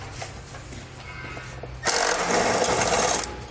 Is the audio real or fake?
real